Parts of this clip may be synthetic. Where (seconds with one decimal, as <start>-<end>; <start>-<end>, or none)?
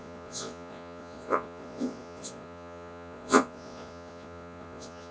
0.0-5.1